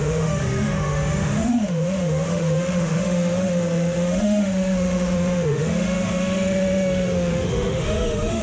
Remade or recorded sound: remade